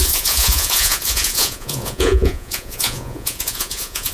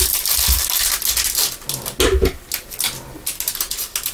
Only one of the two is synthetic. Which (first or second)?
first